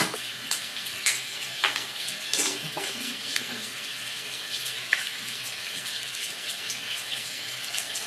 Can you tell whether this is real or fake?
fake